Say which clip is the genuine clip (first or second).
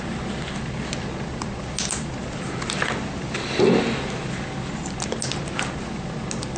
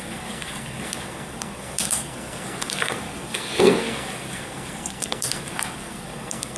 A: first